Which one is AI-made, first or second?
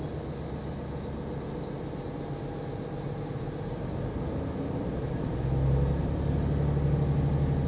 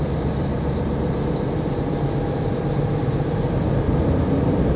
second